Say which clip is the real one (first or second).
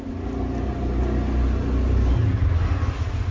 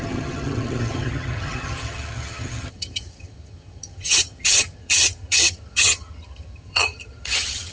first